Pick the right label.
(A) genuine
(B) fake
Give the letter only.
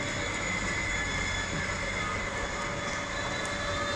A